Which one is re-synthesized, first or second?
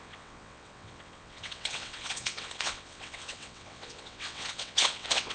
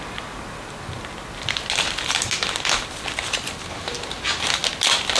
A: first